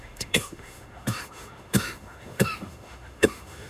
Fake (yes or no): yes